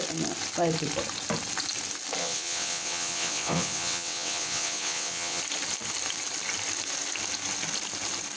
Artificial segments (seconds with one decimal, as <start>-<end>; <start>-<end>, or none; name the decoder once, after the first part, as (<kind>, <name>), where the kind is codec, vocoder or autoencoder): 2.2-5.4 (vocoder, WaveNeXt)